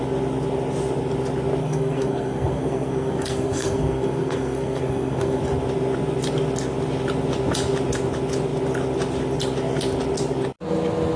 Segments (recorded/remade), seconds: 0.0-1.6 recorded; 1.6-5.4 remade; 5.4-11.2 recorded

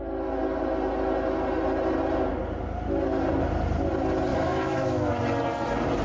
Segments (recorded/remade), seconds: 0.0-4.3 recorded; 4.3-5.1 remade; 5.1-6.0 recorded

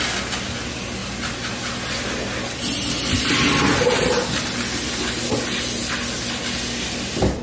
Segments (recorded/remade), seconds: 0.0-7.4 recorded

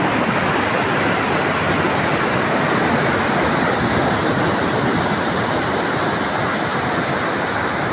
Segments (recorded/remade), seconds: 0.0-7.9 recorded

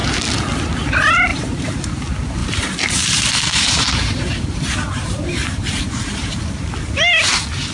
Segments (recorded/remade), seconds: 0.0-1.3 recorded; 1.3-2.0 remade; 2.0-2.4 recorded; 2.4-6.3 remade; 6.3-7.7 recorded

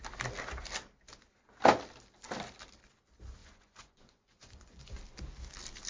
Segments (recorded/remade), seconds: 0.0-3.4 recorded; 3.4-5.0 remade; 5.0-5.9 recorded

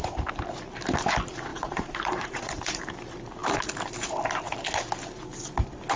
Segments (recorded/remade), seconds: 0.0-1.5 recorded; 1.5-2.8 remade; 2.8-6.0 recorded

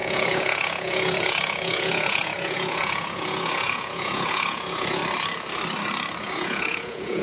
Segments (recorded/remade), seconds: 0.0-5.0 remade; 5.0-6.2 recorded; 6.2-7.2 remade